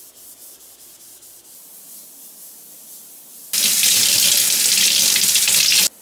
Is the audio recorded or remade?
recorded